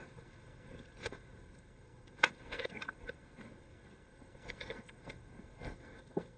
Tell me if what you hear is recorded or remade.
remade